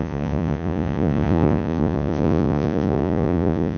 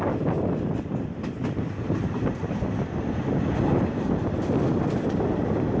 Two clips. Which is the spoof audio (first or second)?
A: first